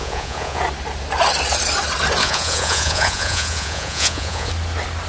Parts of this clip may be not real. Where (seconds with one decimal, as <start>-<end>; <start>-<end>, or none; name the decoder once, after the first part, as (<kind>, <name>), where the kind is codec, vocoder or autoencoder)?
0.0-0.6 (vocoder, Vocos); 2.2-4.5